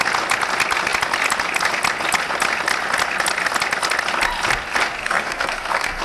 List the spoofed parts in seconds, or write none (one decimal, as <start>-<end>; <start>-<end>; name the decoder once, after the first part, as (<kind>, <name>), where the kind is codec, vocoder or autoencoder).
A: 5.0-6.0 (codec, SNAC)